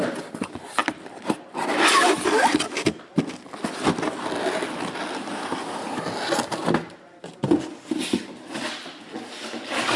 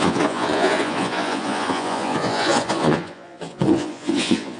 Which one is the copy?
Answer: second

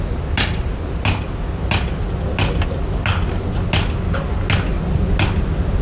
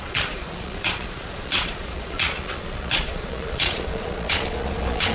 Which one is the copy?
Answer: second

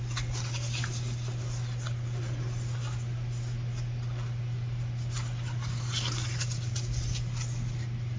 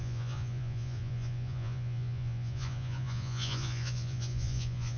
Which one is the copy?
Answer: second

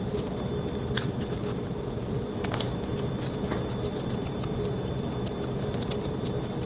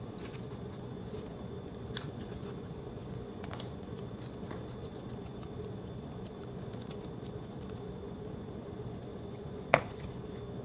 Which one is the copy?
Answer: second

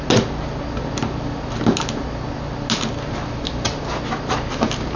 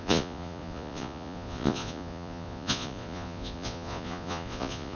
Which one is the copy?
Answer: second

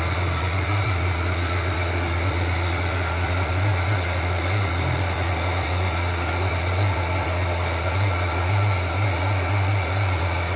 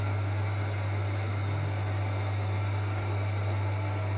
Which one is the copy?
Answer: first